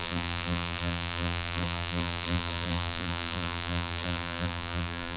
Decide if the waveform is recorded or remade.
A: remade